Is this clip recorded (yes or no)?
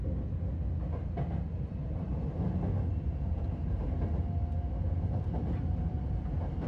yes